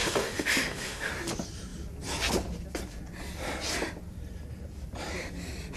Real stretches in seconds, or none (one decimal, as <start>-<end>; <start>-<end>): 1.1-5.8